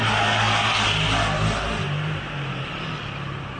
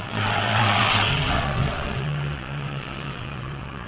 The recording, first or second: first